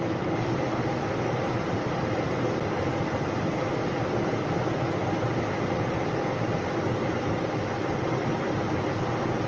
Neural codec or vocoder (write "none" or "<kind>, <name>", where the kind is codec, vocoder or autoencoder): none